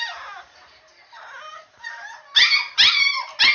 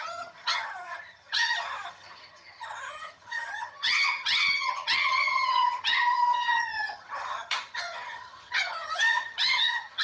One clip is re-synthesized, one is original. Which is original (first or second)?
first